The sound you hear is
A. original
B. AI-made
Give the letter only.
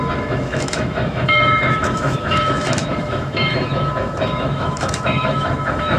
B